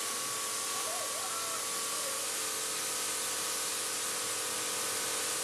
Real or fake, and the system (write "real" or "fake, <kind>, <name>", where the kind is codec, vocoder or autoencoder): real